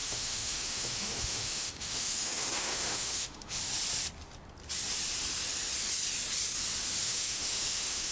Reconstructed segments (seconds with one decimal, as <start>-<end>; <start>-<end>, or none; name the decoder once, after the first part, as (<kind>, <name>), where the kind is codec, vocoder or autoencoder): 0.0-3.6 (autoencoder, DAC-VAE); 7.0-8.1